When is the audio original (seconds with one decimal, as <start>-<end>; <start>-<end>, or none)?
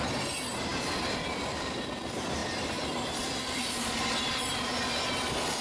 0.0-0.7; 1.8-5.6